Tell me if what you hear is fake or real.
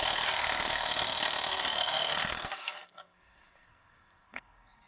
fake